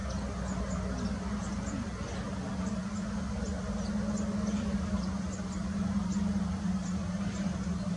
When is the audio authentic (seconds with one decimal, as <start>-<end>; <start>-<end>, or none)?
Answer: 0.0-8.0

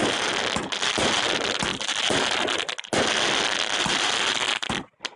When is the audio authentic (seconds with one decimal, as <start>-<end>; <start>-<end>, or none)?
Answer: 0.0-5.2

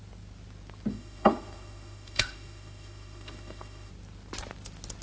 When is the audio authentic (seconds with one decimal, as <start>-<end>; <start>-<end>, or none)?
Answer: 0.0-0.9; 3.9-5.0